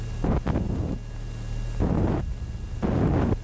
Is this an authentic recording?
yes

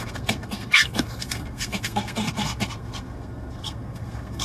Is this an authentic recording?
no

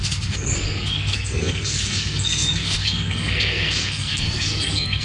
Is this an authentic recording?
no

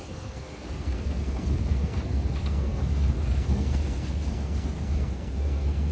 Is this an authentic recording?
no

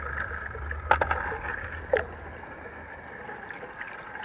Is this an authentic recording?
yes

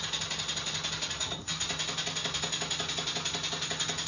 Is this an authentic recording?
yes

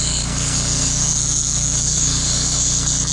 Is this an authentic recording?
no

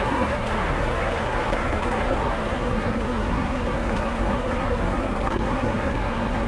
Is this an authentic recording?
no